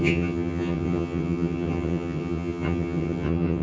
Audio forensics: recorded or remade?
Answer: remade